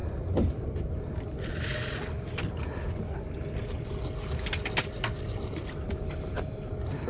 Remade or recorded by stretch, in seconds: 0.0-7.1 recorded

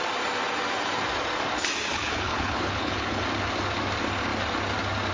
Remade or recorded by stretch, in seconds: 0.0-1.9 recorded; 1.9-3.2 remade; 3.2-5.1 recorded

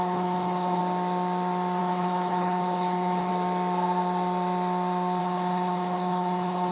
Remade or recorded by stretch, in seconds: 0.0-0.8 remade; 0.8-1.8 recorded; 1.8-3.3 remade; 3.3-5.2 recorded; 5.2-6.7 remade

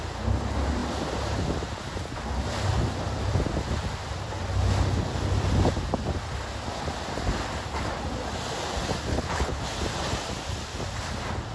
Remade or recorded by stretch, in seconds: 0.0-9.1 recorded; 9.1-9.6 remade; 9.6-11.5 recorded

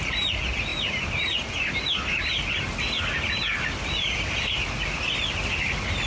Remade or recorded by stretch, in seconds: 0.0-6.1 recorded